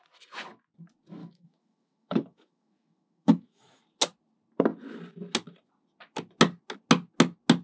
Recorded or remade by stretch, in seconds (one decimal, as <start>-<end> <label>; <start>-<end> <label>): 0.0-1.2 recorded; 1.2-3.8 remade; 3.8-7.6 recorded